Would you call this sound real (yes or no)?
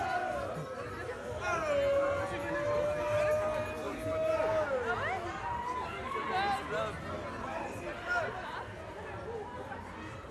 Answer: yes